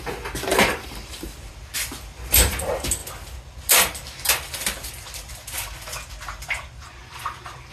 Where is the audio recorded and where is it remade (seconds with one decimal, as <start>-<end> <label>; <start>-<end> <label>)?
0.0-0.5 recorded; 0.5-1.5 remade; 1.5-7.7 recorded